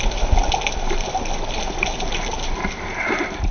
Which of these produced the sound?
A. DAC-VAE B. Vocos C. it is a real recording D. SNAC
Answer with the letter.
C